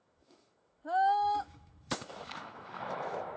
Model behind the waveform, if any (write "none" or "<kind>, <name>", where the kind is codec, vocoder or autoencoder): autoencoder, DAC-VAE